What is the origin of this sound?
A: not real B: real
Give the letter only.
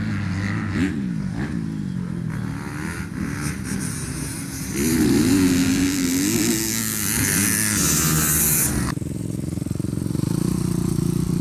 B